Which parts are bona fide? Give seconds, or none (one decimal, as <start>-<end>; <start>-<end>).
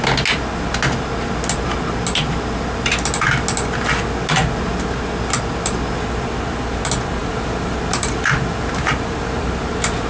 0.0-7.2